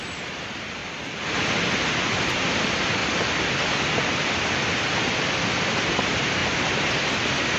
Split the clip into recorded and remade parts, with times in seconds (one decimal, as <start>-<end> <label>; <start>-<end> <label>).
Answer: 0.0-0.8 remade; 0.8-2.6 recorded; 2.6-3.0 remade; 3.0-5.3 recorded; 5.3-6.4 remade; 6.4-7.6 recorded